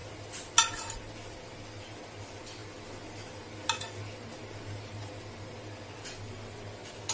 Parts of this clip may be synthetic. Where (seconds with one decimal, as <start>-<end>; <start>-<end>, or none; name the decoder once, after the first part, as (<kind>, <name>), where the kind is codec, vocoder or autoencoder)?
none

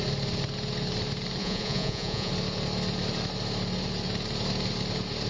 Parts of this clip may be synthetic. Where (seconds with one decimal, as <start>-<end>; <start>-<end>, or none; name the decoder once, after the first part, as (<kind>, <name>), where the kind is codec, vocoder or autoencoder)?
1.4-2.3 (vocoder, Vocos)

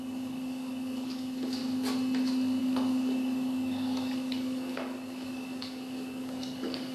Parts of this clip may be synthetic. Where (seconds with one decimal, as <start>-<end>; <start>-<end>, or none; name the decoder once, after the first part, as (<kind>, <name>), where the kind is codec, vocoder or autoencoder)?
0.0-1.6 (codec, DAC); 2.6-6.9

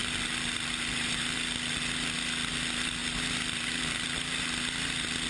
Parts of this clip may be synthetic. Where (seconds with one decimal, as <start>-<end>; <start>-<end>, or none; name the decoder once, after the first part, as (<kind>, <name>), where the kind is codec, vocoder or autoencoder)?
none

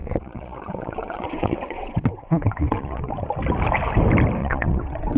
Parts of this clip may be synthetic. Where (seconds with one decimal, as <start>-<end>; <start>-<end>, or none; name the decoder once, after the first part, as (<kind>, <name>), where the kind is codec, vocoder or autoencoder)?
0.0-3.1 (vocoder, WaveNeXt); 4.4-5.2